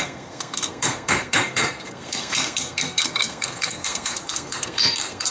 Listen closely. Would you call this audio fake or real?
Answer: fake